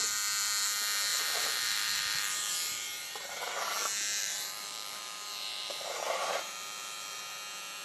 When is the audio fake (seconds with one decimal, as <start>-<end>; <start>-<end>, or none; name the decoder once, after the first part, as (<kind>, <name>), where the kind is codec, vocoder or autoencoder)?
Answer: 1.1-3.5 (vocoder, BigVGAN v2); 4.2-7.2